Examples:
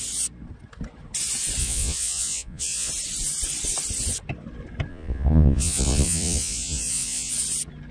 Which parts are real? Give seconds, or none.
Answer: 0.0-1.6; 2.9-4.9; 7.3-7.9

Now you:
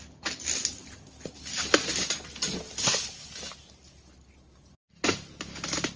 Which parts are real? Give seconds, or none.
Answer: 0.0-6.0

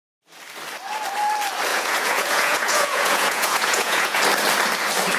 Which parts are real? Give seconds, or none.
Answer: 0.0-1.7; 4.2-5.2

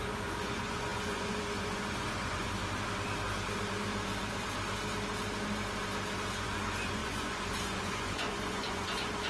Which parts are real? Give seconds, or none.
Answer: 2.6-6.3

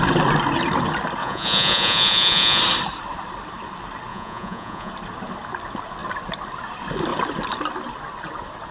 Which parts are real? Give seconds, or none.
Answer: 0.0-1.2; 2.6-4.1; 4.9-8.7